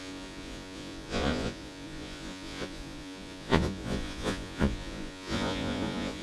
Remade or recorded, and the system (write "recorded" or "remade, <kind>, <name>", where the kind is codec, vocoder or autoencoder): remade, vocoder, Vocos